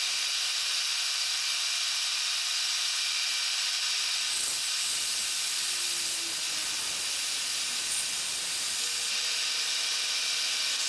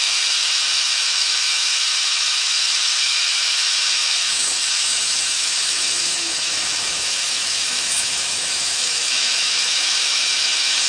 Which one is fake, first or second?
second